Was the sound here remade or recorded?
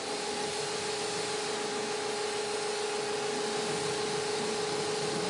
recorded